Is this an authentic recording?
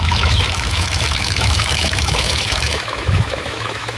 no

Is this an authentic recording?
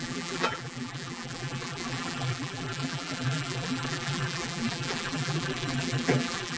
no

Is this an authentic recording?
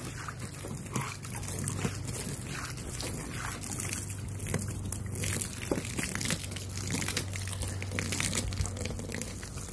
yes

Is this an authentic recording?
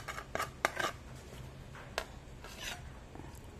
yes